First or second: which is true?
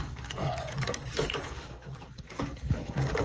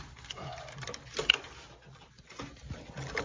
second